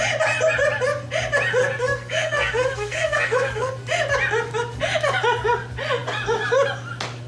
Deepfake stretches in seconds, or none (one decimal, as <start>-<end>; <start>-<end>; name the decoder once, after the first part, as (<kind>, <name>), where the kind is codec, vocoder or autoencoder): 1.6-3.7 (codec, SNAC)